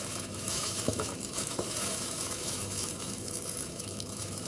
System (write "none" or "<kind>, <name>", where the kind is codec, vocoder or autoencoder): autoencoder, DAC-VAE